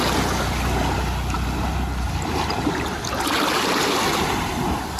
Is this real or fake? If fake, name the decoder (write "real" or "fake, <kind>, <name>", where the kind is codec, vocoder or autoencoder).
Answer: real